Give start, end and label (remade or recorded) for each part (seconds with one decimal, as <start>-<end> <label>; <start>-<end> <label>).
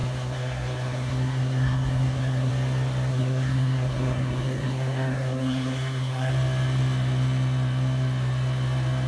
0.0-2.5 remade; 2.5-3.1 recorded; 3.1-6.3 remade; 6.3-9.1 recorded